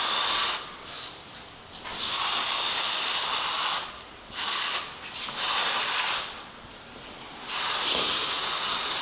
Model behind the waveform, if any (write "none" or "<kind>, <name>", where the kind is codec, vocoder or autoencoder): none